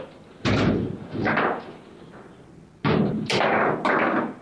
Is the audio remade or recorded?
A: recorded